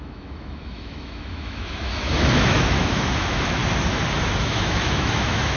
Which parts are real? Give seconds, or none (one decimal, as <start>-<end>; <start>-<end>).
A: 3.6-4.4

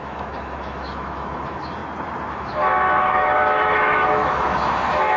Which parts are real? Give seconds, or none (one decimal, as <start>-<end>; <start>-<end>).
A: 1.8-2.3

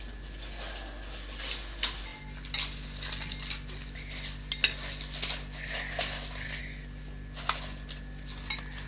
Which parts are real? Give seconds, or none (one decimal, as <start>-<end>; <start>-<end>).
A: 0.0-8.9

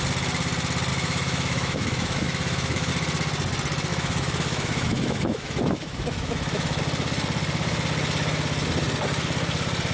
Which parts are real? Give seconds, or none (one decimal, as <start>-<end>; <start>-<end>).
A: 0.0-0.9; 2.9-3.9; 6.8-9.9

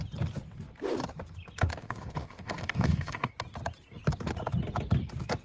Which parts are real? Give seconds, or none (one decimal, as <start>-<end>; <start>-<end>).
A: 0.0-1.7; 3.3-5.4